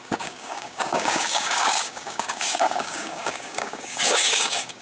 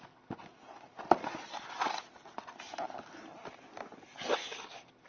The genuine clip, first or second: second